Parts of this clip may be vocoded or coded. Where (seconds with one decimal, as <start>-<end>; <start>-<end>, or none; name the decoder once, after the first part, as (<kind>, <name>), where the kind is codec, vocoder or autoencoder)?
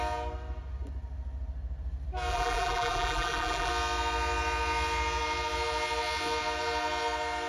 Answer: 2.3-3.7 (vocoder, BigVGAN v2)